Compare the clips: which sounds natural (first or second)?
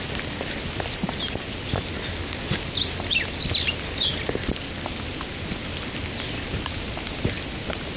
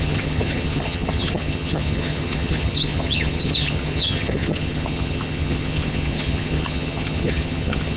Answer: first